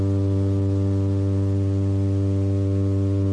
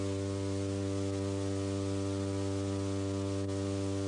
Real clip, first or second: second